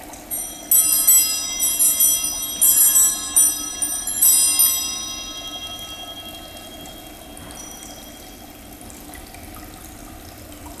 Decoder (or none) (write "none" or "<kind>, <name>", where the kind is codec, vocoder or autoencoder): none